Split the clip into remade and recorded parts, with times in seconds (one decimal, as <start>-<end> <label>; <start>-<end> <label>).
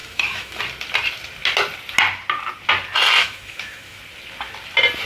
0.0-0.6 remade; 0.6-3.2 recorded; 3.2-4.0 remade; 4.0-5.1 recorded